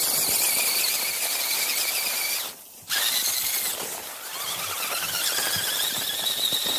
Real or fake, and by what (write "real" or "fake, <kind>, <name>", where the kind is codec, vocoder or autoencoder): real